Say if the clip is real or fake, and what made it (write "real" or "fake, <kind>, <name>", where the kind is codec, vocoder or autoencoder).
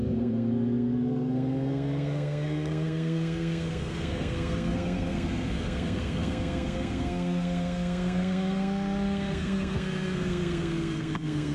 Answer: fake, codec, SNAC